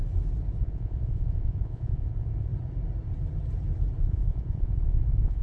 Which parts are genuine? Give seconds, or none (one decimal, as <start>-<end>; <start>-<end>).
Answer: 0.0-0.6; 2.5-4.0